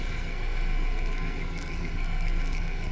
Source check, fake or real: fake